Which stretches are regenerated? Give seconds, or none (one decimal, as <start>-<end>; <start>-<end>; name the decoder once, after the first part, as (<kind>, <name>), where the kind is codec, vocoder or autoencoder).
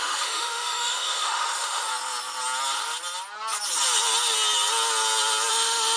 0.0-1.9 (autoencoder, DAC-VAE); 5.5-6.0